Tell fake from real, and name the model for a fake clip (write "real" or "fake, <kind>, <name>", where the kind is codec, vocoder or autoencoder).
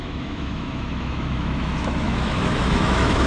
fake, autoencoder, DAC-VAE